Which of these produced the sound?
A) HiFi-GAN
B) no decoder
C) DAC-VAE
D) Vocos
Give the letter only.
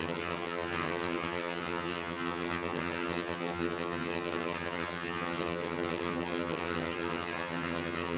A